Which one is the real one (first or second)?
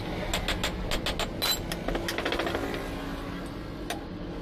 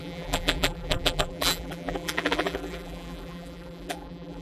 first